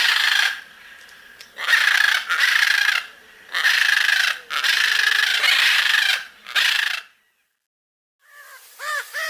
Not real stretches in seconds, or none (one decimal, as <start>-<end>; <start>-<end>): none